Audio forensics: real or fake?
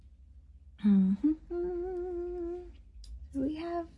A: real